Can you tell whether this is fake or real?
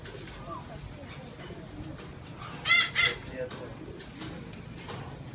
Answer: real